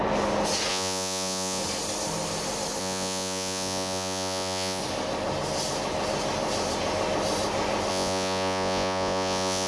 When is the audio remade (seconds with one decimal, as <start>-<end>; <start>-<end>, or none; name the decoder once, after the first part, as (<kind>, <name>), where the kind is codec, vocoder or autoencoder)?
0.7-1.6 (vocoder, Vocos); 2.8-4.8; 7.9-9.7